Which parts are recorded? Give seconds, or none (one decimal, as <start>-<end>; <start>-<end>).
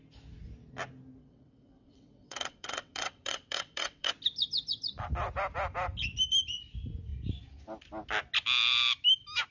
0.0-1.2; 4.1-9.5